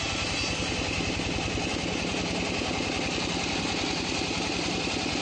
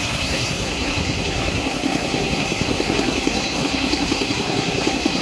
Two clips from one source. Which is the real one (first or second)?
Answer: first